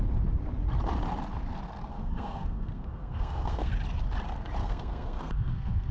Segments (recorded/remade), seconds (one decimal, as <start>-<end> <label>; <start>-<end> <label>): 0.0-1.9 recorded; 1.9-3.7 remade; 3.7-4.6 recorded; 4.6-5.9 remade